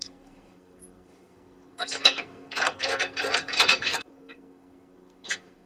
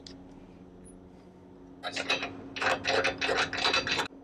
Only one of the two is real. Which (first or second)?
second